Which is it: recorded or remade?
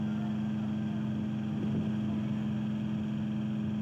recorded